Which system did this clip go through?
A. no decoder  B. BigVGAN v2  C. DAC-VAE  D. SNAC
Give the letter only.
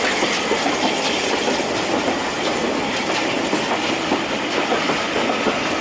A